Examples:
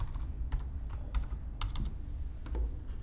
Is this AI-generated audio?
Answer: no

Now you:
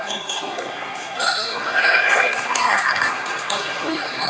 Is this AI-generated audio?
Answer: yes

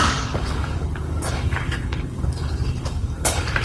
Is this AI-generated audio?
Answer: yes